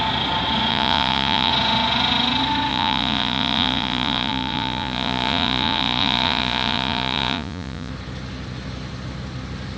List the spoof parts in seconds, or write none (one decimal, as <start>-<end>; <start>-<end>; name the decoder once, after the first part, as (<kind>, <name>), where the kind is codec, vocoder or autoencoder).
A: 0.7-1.5 (vocoder, Vocos); 2.7-7.9